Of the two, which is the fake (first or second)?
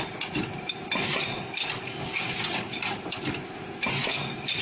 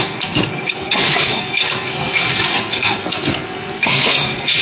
second